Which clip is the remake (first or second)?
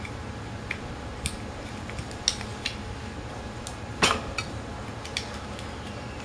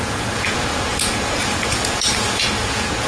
second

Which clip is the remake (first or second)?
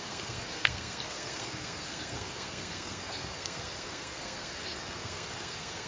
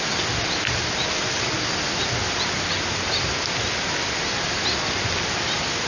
first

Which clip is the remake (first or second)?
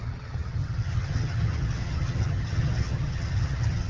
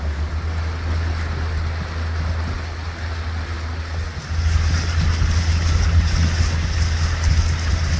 first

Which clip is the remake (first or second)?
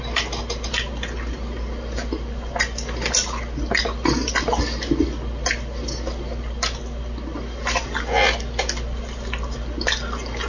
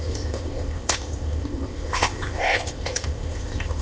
second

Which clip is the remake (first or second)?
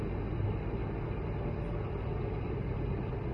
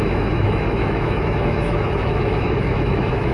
second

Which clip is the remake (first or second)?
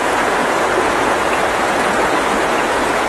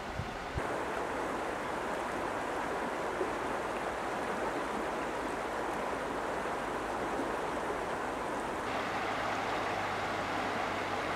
first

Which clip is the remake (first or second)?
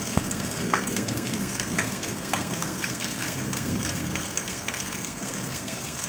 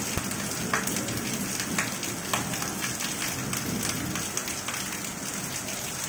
first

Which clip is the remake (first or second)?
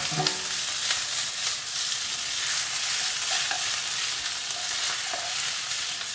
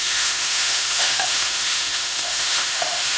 second